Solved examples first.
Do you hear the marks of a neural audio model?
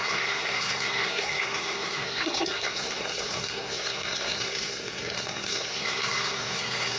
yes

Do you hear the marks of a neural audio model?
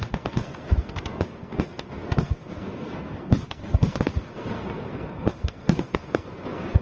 yes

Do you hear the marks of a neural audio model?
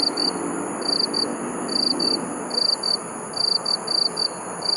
no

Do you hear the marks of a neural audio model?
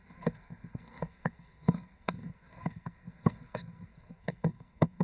yes